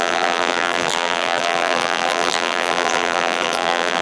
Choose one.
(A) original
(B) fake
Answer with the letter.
B